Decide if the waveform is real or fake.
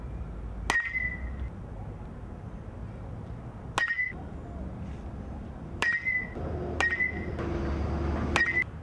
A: real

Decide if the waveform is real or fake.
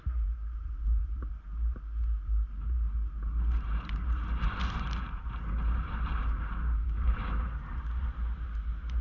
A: fake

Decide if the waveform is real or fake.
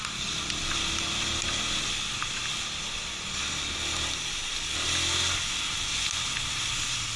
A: real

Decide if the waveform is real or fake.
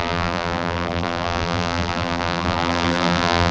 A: fake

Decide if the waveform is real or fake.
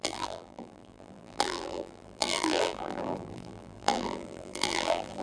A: fake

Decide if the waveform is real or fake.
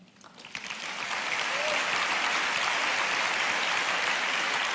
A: real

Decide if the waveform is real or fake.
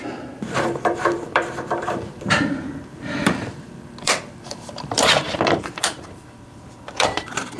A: fake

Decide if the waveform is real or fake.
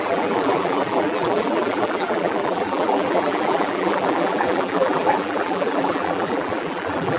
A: fake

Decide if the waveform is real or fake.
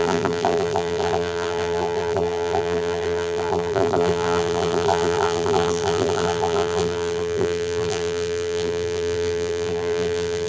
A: fake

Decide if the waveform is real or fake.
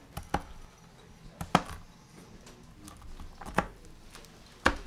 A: real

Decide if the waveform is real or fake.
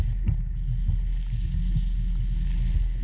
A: real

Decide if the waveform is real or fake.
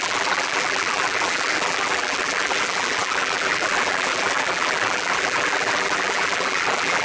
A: fake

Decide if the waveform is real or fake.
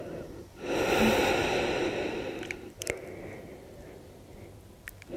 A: real